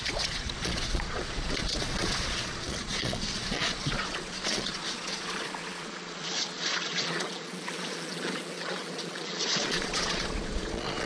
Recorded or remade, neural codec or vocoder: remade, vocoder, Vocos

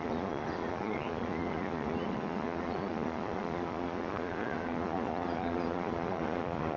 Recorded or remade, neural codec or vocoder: remade, vocoder, Vocos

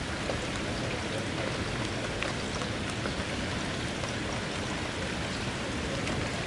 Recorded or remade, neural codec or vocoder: recorded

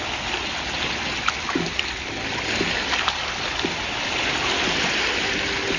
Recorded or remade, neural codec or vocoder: recorded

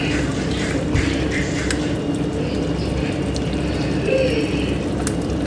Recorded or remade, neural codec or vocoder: recorded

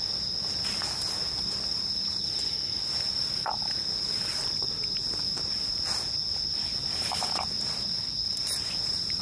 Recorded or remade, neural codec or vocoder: recorded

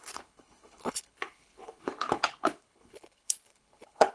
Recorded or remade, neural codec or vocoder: remade, codec, HILCodec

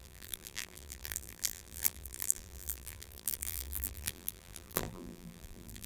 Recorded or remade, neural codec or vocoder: remade, vocoder, BigVGAN v2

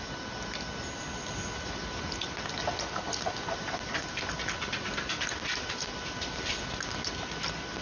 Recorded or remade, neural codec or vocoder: recorded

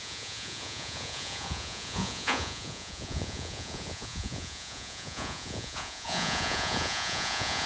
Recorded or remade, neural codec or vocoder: remade, vocoder, Vocos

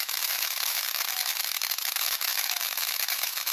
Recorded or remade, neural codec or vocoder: remade, autoencoder, DAC-VAE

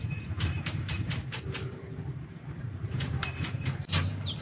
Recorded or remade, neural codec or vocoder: remade, vocoder, BigVGAN v2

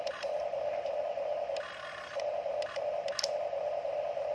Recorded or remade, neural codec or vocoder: recorded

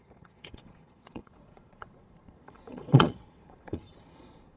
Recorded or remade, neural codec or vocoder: remade, vocoder, Vocos